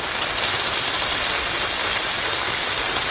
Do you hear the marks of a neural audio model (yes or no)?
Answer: no